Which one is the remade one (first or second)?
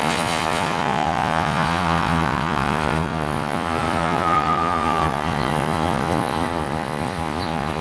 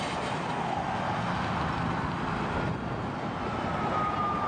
first